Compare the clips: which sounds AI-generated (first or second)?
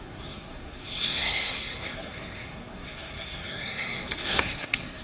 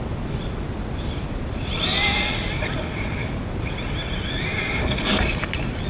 first